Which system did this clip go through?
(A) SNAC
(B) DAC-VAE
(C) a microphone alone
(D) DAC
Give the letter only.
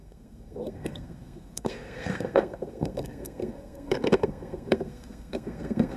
A